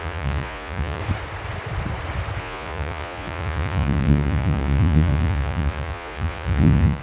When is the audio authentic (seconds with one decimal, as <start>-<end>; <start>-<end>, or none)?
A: 1.0-2.4